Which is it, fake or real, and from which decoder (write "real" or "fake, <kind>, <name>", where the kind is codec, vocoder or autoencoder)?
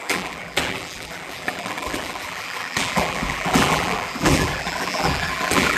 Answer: fake, vocoder, BigVGAN v2